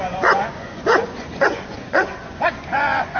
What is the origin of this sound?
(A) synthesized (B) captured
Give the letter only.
A